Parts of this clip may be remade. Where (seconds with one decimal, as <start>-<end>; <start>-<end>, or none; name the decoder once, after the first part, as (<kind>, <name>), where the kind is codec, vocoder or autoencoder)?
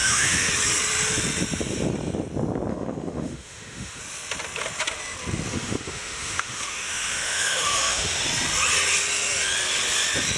0.0-0.5 (autoencoder, DAC-VAE); 2.7-4.0; 5.5-8.2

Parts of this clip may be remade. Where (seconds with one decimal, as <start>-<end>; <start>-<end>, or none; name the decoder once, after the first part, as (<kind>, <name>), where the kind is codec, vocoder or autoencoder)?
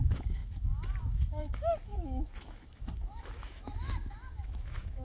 0.0-5.0 (autoencoder, DAC-VAE)